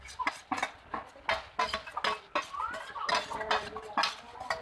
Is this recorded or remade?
recorded